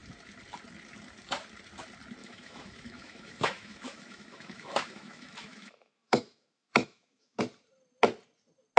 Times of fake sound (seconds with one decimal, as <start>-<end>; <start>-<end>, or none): 2.2-7.4